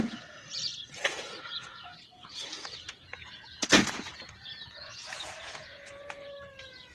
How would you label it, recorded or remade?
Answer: remade